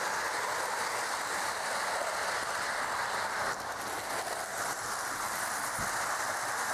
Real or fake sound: real